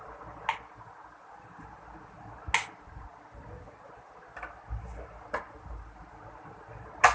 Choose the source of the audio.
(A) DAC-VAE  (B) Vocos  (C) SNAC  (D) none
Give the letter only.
D